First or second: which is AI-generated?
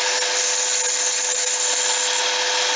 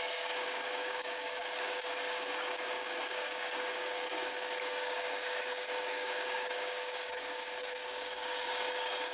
second